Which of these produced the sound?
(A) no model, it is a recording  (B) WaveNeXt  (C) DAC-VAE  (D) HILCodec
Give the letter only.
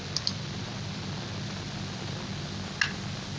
A